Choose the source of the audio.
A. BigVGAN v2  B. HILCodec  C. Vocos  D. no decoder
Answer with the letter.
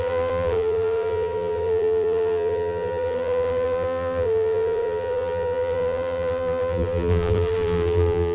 A